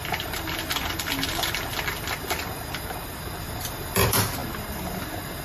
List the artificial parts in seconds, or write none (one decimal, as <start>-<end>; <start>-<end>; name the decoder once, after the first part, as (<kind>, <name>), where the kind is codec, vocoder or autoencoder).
0.0-5.4 (vocoder, BigVGAN v2)